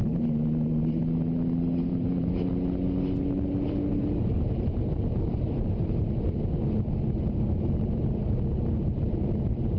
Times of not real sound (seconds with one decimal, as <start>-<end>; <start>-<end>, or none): 0.0-1.0; 1.9-2.5; 3.9-5.8; 8.2-9.0